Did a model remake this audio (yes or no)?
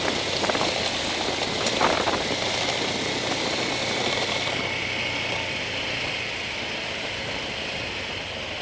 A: no